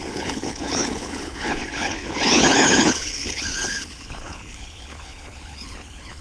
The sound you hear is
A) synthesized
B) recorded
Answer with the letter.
A